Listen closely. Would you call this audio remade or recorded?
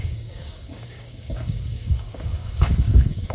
remade